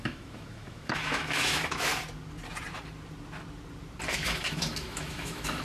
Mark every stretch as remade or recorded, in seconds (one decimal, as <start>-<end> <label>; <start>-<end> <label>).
0.0-1.9 remade; 1.9-4.1 recorded; 4.1-5.6 remade

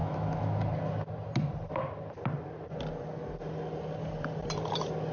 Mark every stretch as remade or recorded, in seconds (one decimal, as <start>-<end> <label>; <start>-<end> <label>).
0.0-0.6 remade; 0.6-5.1 recorded

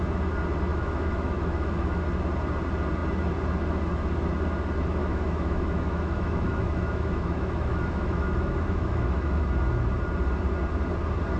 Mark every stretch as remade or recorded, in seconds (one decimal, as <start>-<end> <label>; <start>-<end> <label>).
0.0-0.7 recorded; 0.7-2.0 remade; 2.0-5.0 recorded; 5.0-9.5 remade; 9.5-11.4 recorded

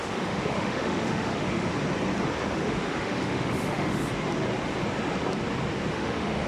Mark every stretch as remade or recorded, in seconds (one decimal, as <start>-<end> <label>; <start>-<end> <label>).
0.0-1.7 remade; 1.7-2.5 recorded; 2.5-4.1 remade; 4.1-5.9 recorded; 5.9-6.5 remade

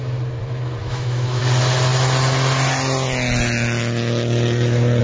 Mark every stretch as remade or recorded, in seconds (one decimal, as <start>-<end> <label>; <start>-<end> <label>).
0.0-0.8 recorded; 0.8-1.4 remade; 1.4-5.0 recorded